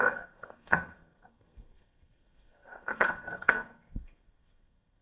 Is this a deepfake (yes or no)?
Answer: yes